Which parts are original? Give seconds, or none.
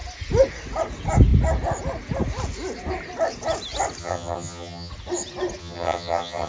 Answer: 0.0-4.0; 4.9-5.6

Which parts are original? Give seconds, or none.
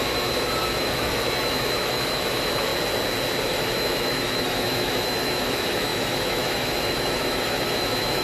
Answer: 2.7-3.4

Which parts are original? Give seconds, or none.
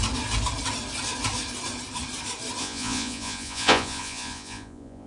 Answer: 0.0-2.6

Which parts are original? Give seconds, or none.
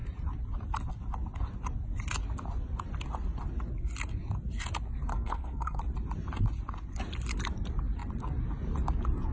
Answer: 0.0-5.1; 5.8-9.3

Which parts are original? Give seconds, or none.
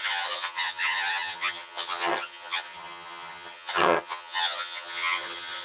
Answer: none